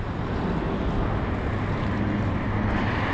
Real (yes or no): yes